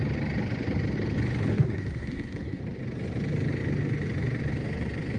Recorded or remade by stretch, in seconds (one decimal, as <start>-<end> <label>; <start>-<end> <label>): 0.0-1.5 recorded; 1.5-2.6 remade; 2.6-5.2 recorded